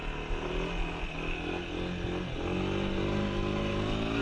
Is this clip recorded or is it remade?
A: recorded